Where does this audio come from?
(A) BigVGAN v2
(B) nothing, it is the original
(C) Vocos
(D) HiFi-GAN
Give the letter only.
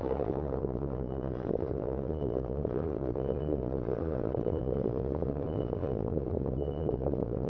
C